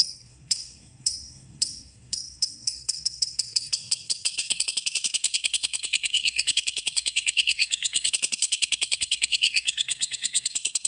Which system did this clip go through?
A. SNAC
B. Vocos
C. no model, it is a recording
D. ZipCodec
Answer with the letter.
A